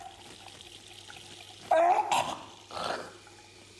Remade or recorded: recorded